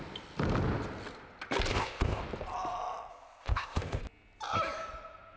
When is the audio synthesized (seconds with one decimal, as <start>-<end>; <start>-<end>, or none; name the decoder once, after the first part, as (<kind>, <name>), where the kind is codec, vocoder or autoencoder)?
1.7-2.2 (codec, ZipCodec); 3.1-4.0